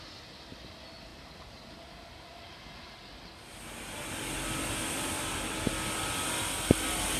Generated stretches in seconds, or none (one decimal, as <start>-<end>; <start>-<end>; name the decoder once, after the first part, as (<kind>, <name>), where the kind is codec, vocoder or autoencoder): none